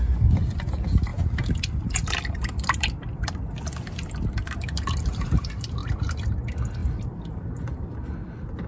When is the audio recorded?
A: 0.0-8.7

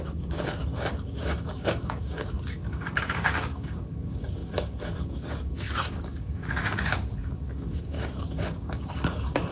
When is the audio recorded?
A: none

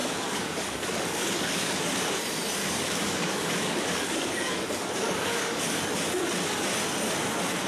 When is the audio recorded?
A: 2.2-2.6; 5.8-7.7

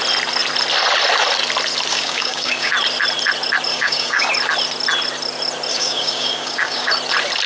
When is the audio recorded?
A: 0.0-1.9; 2.7-3.7; 4.3-5.7; 6.9-7.5